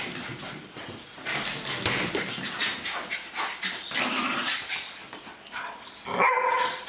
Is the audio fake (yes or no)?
no